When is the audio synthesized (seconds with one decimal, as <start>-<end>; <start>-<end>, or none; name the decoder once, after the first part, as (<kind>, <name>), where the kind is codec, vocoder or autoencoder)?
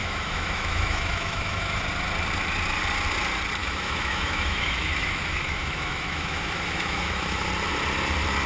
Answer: 0.0-1.8 (autoencoder, DAC-VAE); 3.6-7.5